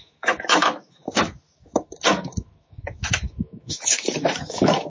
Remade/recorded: remade